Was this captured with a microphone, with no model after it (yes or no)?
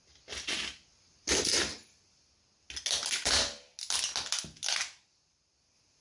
yes